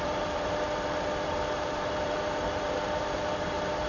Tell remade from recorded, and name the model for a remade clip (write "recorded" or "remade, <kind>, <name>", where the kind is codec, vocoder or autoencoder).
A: remade, vocoder, BigVGAN v2